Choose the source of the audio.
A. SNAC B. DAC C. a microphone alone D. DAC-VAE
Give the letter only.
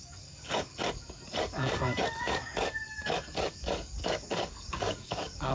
B